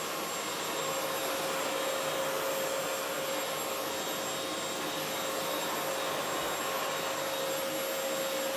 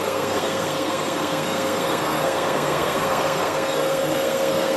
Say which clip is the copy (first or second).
second